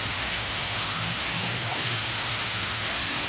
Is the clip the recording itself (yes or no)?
no